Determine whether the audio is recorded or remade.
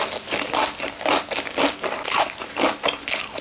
recorded